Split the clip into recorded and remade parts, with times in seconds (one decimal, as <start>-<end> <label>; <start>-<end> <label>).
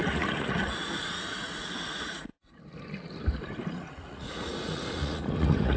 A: 0.0-2.3 remade; 2.3-3.7 recorded; 3.7-5.8 remade